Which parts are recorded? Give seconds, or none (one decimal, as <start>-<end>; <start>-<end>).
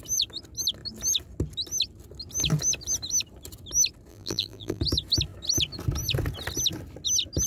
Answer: 0.0-4.1; 4.8-7.5